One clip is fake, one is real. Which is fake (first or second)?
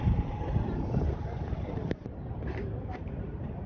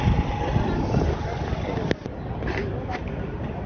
first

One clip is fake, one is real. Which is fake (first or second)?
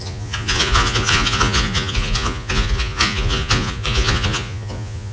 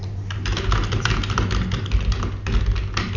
first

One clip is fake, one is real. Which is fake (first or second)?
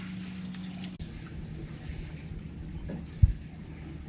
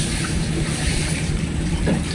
second